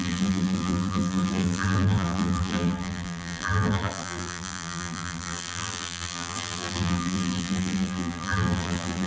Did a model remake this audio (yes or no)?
yes